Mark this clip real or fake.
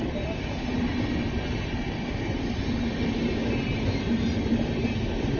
real